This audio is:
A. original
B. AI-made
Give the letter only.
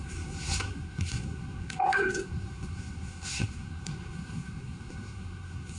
B